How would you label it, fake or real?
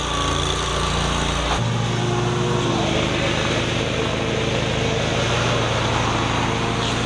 real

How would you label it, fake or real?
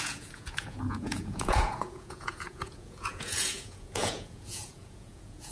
fake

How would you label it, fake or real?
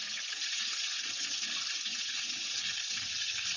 fake